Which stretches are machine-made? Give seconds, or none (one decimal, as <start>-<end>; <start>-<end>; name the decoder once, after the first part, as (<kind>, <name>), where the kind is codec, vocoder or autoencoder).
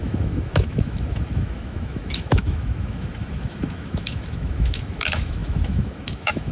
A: 0.0-6.5 (autoencoder, DAC-VAE)